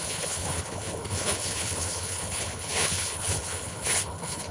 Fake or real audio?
fake